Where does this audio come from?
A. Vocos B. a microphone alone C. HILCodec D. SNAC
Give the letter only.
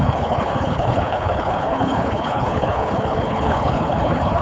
C